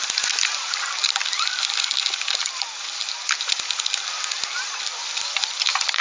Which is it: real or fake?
real